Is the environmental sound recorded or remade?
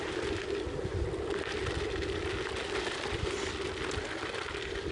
recorded